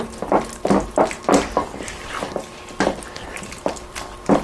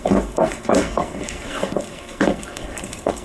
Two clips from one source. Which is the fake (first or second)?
second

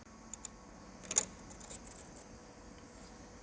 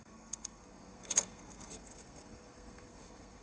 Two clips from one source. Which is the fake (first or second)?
second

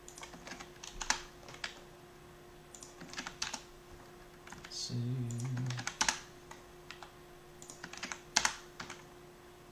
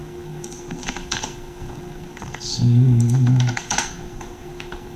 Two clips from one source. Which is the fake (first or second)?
second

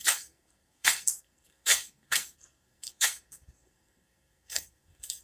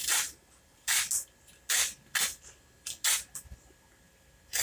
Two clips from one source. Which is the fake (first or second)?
first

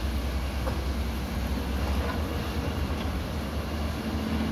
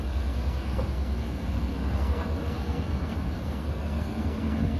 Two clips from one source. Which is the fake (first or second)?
second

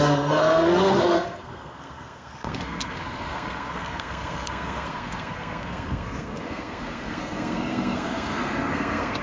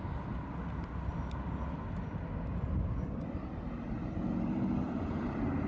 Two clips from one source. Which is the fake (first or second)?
first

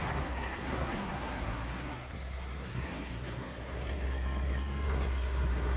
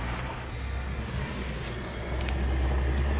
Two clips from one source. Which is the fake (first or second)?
first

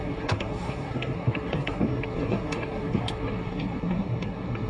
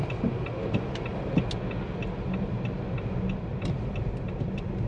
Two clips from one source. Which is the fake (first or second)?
first